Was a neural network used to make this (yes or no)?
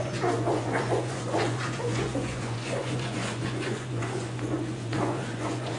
yes